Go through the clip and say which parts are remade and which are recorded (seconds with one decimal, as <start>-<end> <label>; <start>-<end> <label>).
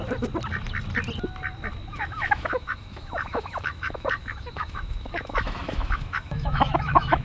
0.0-1.9 recorded; 1.9-7.2 remade